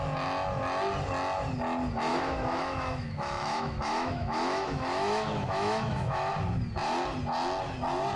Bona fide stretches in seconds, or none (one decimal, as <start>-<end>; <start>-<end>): 0.0-2.1; 6.3-8.2